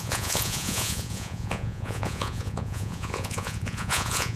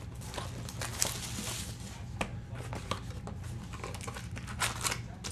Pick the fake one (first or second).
first